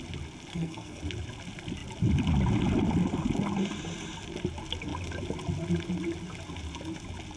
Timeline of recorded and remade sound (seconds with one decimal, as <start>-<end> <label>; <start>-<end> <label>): 0.0-0.5 recorded; 0.5-1.0 remade; 1.0-7.4 recorded